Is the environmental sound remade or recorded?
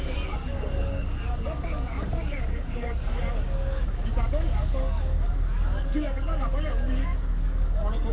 remade